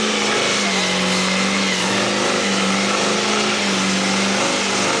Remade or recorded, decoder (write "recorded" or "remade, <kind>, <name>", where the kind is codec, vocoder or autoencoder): recorded